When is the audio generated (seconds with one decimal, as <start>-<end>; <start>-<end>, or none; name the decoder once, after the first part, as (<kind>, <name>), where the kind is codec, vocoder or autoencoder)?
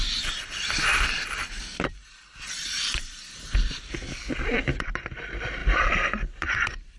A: 0.0-7.0 (vocoder, BigVGAN v2)